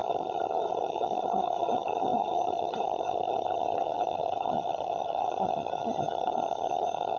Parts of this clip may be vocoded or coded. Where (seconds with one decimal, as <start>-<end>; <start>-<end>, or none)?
0.0-7.2